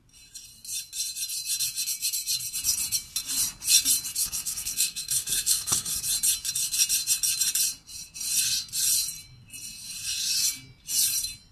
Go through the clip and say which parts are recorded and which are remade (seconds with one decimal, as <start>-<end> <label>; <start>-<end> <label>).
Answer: 0.0-4.2 recorded; 4.2-6.0 remade; 6.0-11.5 recorded